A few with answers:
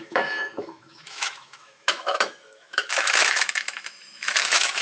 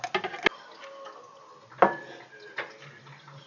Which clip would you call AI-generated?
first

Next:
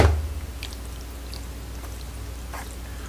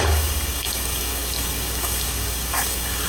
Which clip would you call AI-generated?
second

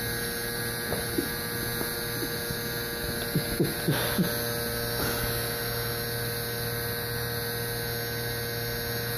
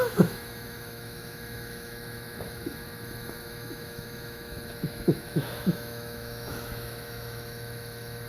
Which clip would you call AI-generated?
second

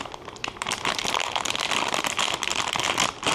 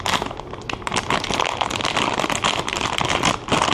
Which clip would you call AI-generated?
first